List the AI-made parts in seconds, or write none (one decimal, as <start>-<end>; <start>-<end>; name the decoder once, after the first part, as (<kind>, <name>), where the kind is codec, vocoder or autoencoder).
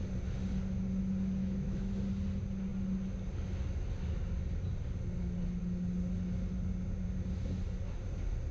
1.4-1.9 (autoencoder, DAC-VAE)